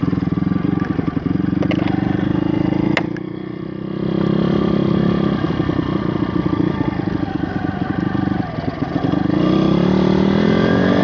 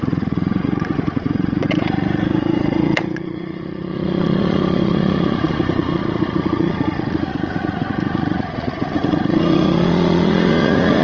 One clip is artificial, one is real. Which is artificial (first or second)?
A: second